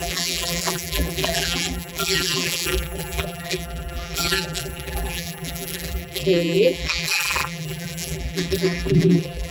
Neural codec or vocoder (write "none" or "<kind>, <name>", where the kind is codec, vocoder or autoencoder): vocoder, BigVGAN v2